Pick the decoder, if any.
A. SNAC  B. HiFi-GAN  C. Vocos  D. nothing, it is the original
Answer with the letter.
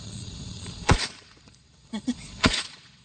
C